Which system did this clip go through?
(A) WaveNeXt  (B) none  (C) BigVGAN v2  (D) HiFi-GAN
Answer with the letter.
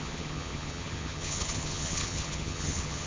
D